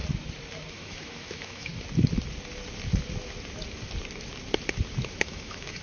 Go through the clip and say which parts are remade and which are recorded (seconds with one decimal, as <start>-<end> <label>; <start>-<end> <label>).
0.0-0.7 recorded; 0.7-1.7 remade; 1.7-5.2 recorded; 5.2-5.8 remade